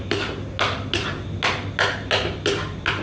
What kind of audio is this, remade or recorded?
recorded